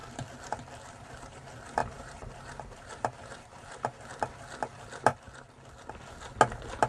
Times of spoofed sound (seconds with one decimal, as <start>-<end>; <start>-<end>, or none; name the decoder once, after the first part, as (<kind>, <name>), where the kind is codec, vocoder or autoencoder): 1.8-4.1 (vocoder, BigVGAN v2)